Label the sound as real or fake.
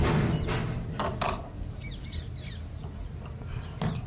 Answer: real